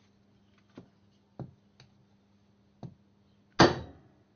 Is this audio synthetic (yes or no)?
no